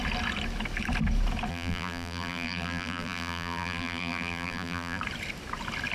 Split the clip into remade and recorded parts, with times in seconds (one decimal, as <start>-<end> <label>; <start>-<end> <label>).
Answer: 0.0-1.5 recorded; 1.5-5.0 remade; 5.0-5.9 recorded